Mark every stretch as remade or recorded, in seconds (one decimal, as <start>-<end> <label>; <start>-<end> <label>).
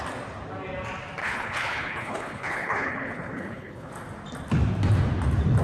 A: 0.0-1.2 recorded; 1.2-3.9 remade; 3.9-5.6 recorded